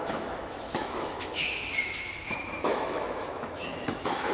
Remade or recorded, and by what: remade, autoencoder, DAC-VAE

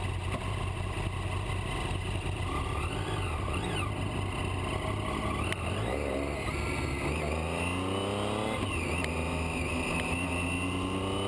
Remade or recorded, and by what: recorded